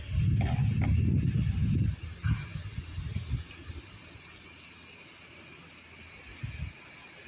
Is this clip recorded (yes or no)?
yes